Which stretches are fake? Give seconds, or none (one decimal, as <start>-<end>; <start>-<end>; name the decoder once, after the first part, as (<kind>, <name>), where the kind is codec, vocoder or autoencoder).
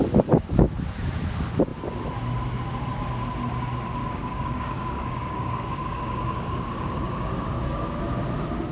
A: 4.0-8.0 (codec, DAC)